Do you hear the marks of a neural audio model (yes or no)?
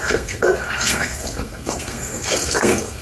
yes